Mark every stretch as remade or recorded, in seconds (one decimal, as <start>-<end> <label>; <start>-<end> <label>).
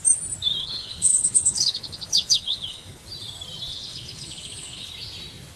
0.0-0.6 recorded; 0.6-3.0 remade; 3.0-3.7 recorded; 3.7-4.9 remade; 4.9-5.6 recorded